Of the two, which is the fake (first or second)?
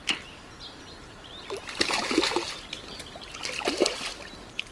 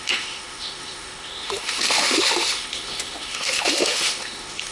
second